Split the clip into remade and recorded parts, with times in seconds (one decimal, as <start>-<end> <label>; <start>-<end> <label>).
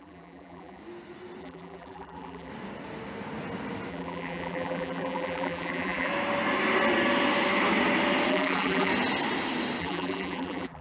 0.0-0.8 remade; 0.8-1.4 recorded; 1.4-2.5 remade; 2.5-3.9 recorded; 3.9-6.1 remade; 6.1-8.3 recorded; 8.3-8.9 remade; 8.9-9.8 recorded; 9.8-10.8 remade